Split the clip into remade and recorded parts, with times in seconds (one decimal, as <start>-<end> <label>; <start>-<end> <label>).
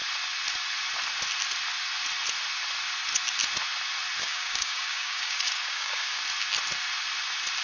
0.0-4.2 recorded; 4.2-6.2 remade; 6.2-7.6 recorded